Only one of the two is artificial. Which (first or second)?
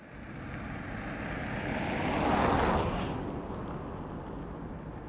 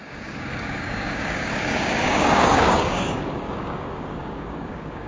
second